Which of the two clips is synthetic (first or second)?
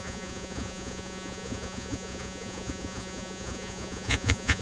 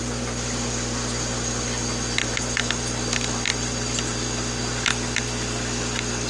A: first